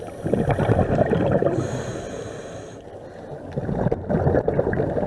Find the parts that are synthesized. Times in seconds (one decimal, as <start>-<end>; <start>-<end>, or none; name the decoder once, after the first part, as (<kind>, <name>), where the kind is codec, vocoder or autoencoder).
none